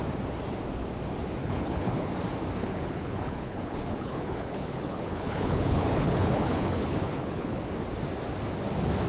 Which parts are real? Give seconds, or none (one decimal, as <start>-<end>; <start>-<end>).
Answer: 0.0-1.4; 2.1-2.6; 7.6-9.1

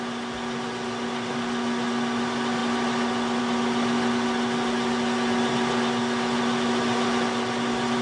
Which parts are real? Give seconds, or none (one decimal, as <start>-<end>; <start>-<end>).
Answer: 0.0-8.0

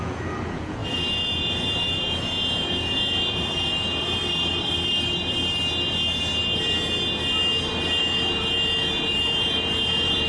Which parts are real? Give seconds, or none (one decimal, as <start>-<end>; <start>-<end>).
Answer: 4.2-8.0